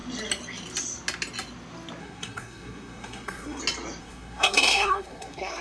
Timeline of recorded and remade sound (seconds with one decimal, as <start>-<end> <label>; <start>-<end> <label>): 0.0-2.0 recorded; 2.0-3.6 remade; 3.6-4.0 recorded; 4.0-5.6 remade